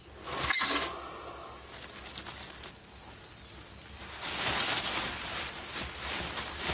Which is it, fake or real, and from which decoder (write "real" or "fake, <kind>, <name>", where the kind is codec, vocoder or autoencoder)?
real